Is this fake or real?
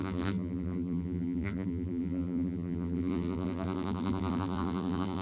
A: fake